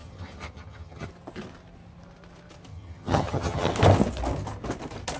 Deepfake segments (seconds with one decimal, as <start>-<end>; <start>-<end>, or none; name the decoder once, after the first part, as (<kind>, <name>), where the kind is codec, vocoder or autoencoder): 0.0-1.1 (vocoder, HiFi-GAN); 2.7-3.7